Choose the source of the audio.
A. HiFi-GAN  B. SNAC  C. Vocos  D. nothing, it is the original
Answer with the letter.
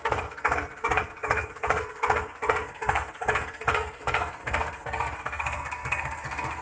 B